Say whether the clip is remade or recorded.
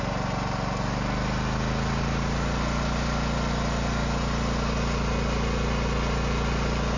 recorded